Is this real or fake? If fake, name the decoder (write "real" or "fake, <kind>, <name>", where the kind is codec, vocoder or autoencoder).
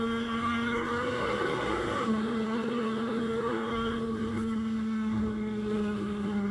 fake, codec, SNAC